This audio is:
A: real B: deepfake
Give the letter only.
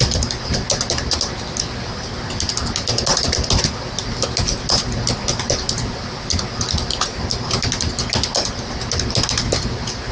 A